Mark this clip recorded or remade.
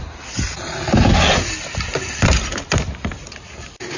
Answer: recorded